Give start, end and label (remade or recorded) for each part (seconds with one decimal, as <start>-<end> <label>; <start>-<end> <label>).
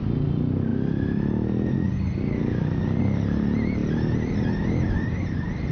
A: 0.0-3.8 recorded; 3.8-4.7 remade; 4.7-5.7 recorded